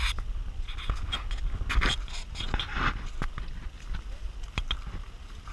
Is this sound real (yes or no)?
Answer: yes